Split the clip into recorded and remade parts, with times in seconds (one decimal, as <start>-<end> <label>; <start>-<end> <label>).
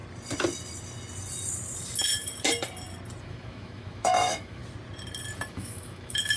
0.0-3.2 recorded; 3.2-4.6 remade; 4.6-5.5 recorded; 5.5-6.4 remade